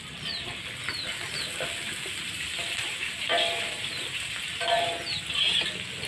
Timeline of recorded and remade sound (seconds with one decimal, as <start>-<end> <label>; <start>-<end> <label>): 0.0-2.6 recorded; 2.6-4.9 remade; 4.9-6.1 recorded